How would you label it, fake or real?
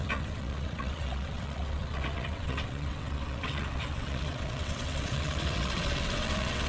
fake